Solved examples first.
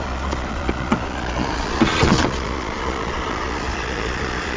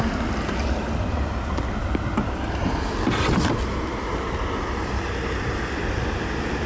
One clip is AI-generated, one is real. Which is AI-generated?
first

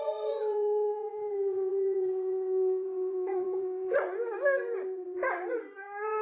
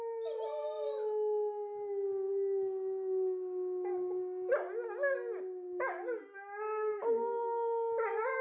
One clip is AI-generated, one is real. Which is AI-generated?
first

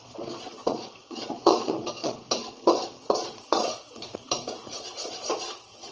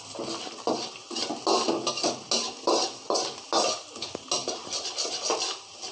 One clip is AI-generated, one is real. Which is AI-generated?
first